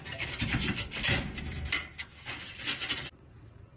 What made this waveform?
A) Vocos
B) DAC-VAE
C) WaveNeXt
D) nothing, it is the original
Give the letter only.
D